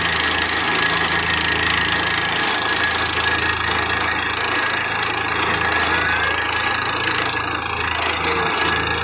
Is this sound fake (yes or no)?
no